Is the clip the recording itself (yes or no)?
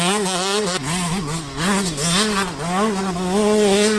yes